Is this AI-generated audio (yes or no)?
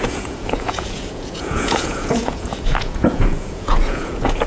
yes